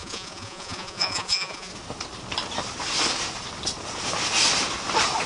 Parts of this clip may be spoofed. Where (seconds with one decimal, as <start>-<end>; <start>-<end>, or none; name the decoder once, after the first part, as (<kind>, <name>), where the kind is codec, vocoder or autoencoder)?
0.0-1.7 (vocoder, Vocos)